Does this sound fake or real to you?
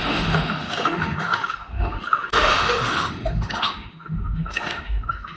fake